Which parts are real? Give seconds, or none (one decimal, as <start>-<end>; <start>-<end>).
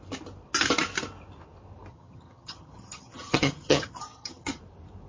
0.0-1.9; 4.6-5.1